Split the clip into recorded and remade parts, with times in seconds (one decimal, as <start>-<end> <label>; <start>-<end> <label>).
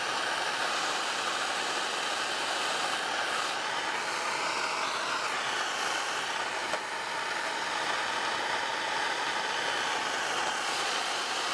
0.0-10.4 recorded; 10.4-11.1 remade; 11.1-11.5 recorded